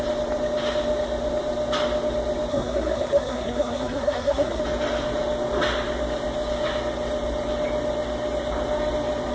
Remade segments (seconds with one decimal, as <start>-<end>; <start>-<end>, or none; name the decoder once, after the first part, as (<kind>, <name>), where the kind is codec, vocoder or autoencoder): 2.5-4.6 (codec, SNAC)